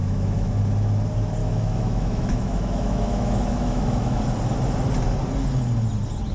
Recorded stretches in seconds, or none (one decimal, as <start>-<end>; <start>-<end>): 0.6-1.4; 4.2-6.3